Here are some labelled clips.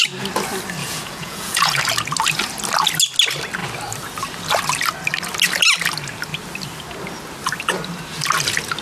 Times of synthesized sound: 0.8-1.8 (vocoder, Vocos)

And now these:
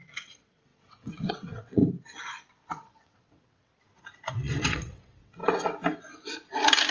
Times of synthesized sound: 0.0-1.8 (vocoder, WaveNeXt); 2.5-3.7; 4.3-5.4